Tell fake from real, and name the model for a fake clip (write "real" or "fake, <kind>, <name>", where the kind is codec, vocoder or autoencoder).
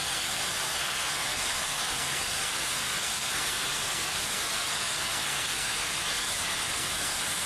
fake, codec, SNAC